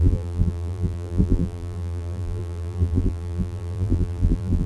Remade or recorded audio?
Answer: remade